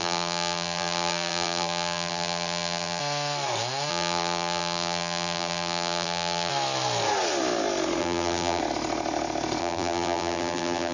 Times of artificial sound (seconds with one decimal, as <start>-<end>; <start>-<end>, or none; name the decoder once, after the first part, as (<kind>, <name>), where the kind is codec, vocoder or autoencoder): 0.0-3.0 (vocoder, BigVGAN v2); 3.9-6.5; 8.0-8.6; 9.6-10.9